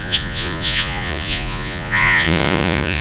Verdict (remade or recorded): remade